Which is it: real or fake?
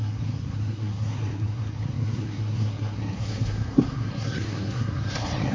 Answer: fake